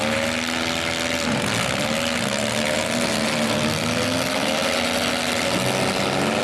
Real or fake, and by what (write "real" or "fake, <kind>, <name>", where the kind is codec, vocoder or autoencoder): real